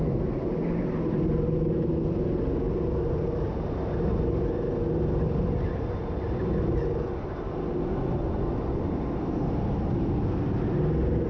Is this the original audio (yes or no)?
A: yes